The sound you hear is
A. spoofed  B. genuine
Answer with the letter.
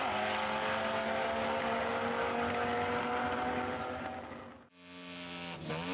B